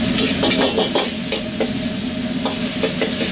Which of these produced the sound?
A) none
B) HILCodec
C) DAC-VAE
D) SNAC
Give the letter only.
A